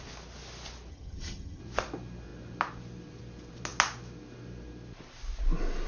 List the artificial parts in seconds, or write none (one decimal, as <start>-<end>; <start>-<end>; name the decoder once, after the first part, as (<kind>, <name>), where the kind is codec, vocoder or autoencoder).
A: 0.9-1.6 (vocoder, HiFi-GAN)

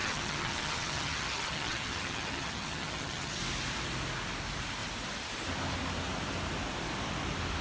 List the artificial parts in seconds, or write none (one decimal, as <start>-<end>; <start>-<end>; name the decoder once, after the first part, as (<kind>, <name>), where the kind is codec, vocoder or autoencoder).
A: 0.0-3.4 (vocoder, HiFi-GAN)

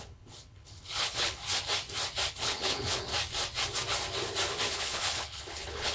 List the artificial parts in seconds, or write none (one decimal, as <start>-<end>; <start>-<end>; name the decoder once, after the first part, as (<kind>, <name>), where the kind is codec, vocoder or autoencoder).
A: 0.0-1.4 (codec, HILCodec); 2.3-3.1; 4.7-5.9

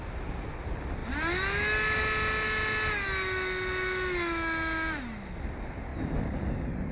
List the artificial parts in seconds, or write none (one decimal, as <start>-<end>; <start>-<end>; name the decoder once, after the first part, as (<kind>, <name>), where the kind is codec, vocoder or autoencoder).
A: none

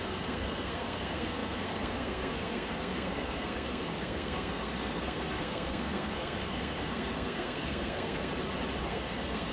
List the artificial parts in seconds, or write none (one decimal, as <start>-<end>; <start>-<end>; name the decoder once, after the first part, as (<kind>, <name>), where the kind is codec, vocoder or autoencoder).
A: 0.0-8.3 (codec, SNAC); 8.8-9.5

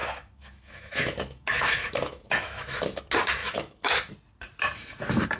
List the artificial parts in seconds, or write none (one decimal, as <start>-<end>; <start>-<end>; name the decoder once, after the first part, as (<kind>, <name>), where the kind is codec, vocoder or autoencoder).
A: 0.0-3.0 (autoencoder, DAC-VAE); 3.4-4.1

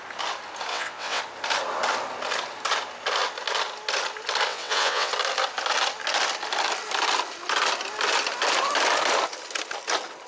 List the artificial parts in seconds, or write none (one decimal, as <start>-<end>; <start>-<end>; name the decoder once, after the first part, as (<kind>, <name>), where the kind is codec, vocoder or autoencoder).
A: 0.7-1.2 (vocoder, WaveNeXt); 4.5-5.1

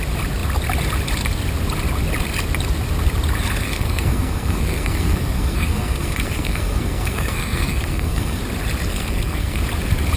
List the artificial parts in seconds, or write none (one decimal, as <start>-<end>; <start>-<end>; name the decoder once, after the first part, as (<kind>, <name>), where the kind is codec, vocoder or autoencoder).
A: 3.6-8.4 (codec, SNAC); 8.9-9.6